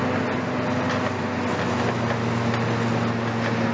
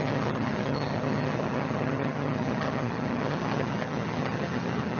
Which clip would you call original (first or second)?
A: first